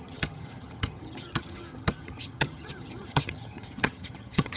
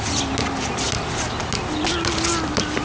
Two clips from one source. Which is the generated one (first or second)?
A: first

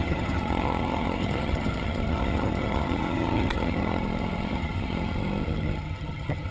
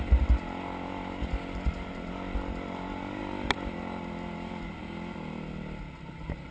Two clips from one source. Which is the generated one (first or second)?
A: first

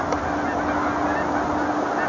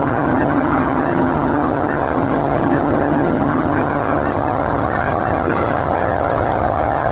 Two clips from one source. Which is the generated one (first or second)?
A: second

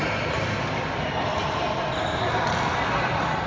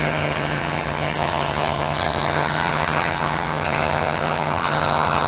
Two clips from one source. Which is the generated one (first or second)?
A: second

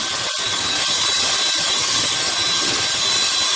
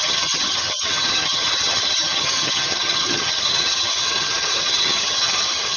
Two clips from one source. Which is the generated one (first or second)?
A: second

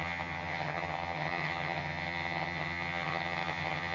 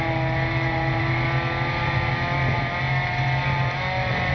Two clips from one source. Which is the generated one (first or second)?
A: first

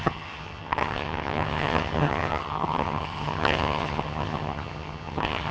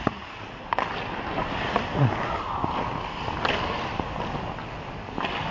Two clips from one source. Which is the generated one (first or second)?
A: first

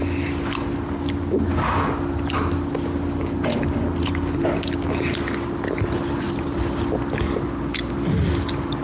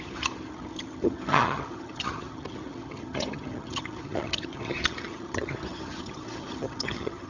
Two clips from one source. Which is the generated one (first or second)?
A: second